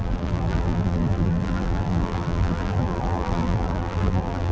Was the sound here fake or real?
fake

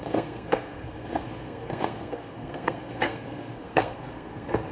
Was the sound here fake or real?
fake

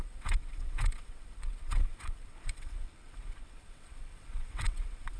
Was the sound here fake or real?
fake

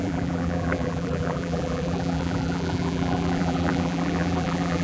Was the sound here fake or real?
fake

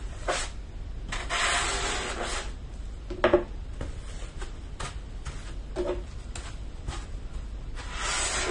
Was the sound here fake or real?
real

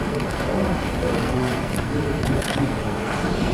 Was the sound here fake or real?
fake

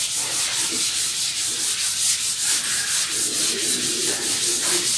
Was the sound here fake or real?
real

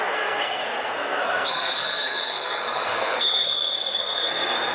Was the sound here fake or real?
fake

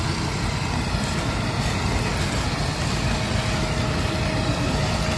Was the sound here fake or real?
real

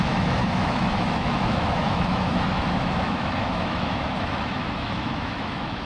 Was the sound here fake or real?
fake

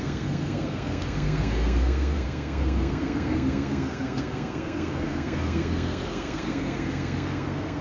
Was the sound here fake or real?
fake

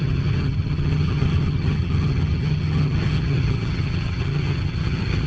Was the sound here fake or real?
fake